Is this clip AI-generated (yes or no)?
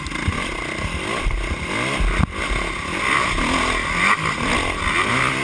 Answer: no